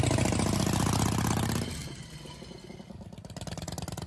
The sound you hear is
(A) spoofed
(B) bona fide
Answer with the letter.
B